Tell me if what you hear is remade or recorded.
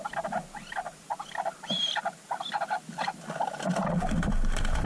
recorded